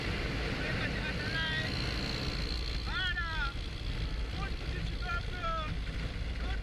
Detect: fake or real real